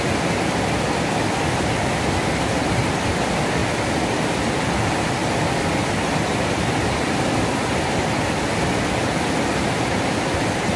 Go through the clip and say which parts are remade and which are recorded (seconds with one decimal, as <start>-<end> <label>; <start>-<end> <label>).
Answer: 0.0-3.6 recorded; 3.6-4.5 remade; 4.5-10.8 recorded